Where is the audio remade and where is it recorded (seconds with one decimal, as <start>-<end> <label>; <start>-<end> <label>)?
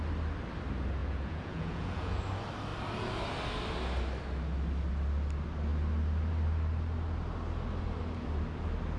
0.0-1.0 recorded; 1.0-2.2 remade; 2.2-9.0 recorded